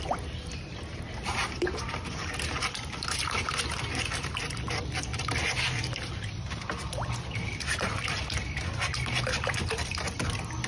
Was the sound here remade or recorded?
recorded